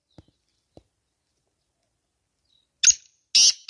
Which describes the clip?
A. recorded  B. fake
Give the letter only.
A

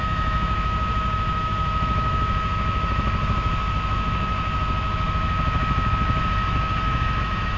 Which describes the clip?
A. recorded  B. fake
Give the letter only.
B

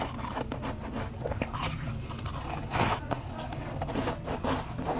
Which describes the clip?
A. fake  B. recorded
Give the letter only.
B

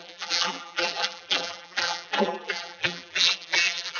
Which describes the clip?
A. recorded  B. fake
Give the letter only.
B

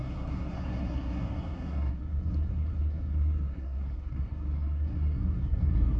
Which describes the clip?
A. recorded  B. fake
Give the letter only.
B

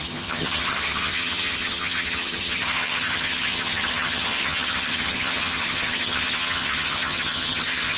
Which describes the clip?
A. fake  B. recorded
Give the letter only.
A